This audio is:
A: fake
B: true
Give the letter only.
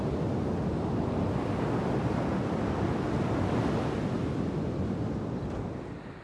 B